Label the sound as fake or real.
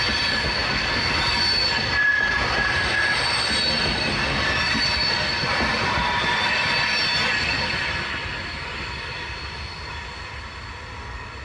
real